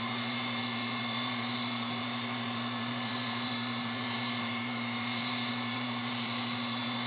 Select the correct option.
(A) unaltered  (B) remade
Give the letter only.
B